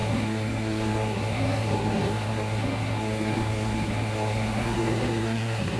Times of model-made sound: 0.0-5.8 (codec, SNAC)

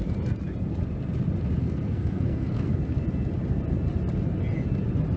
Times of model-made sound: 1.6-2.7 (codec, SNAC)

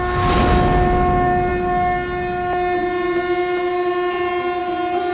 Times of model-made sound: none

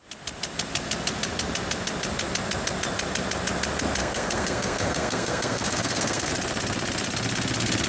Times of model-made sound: 4.0-6.3 (codec, SNAC)